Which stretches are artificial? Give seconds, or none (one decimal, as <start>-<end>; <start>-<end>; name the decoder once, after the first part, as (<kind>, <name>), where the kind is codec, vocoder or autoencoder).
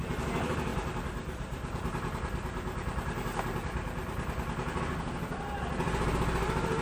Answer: 0.7-4.8 (vocoder, BigVGAN v2)